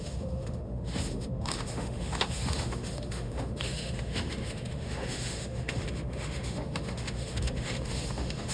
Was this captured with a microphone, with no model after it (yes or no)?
no